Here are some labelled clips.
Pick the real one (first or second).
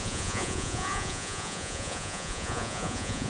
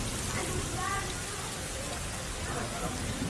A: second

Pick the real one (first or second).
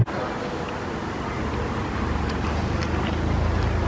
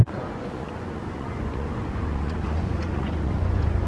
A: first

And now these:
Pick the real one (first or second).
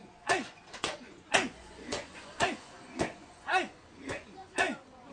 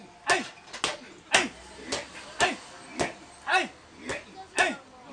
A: second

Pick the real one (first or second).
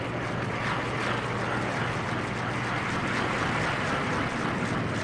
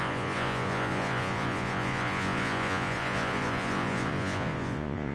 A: first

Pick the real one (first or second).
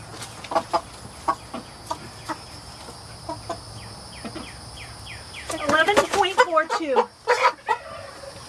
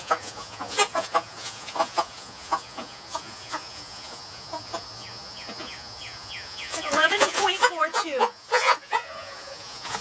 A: first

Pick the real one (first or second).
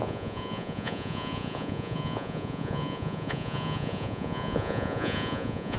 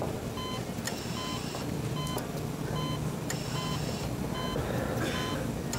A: second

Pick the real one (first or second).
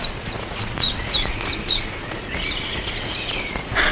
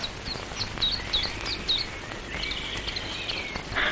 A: second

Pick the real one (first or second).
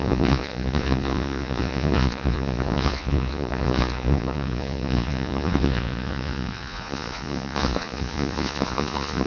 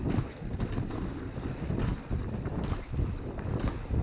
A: second